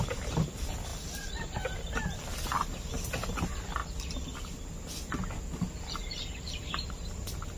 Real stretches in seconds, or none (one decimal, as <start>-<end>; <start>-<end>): 0.0-0.9; 2.3-7.6